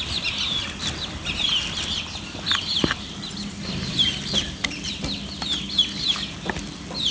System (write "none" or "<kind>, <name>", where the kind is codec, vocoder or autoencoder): none